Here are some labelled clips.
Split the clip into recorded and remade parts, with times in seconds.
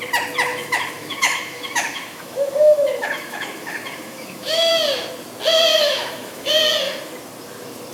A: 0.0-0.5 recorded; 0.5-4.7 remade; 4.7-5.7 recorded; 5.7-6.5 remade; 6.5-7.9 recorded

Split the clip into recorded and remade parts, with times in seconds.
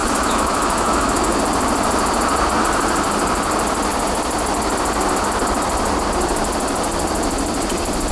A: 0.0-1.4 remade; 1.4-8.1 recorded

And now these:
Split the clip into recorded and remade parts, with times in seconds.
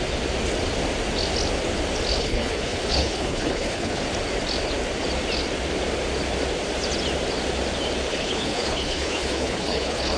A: 0.0-2.2 recorded; 2.2-4.0 remade; 4.0-8.1 recorded; 8.1-10.2 remade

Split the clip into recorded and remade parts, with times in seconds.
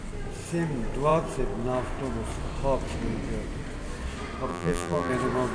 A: 0.0-4.5 recorded; 4.5-5.1 remade; 5.1-5.5 recorded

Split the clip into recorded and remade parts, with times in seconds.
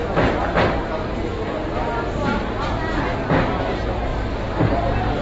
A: 0.0-5.2 recorded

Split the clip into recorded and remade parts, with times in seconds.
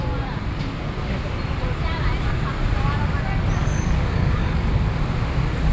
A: 0.0-3.6 recorded; 3.6-4.7 remade; 4.7-5.7 recorded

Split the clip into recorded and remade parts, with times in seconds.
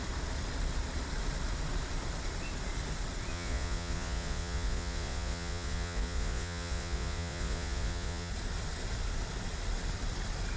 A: 0.0-3.3 recorded; 3.3-8.3 remade; 8.3-10.6 recorded